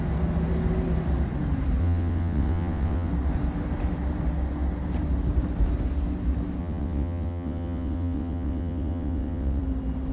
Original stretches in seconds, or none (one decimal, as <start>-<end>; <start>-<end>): 0.0-1.8; 3.1-6.6; 9.6-10.1